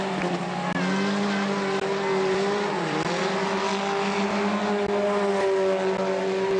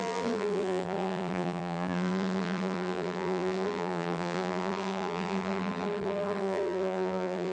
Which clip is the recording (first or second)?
first